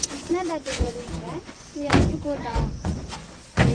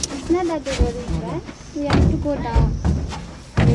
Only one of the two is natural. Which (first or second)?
second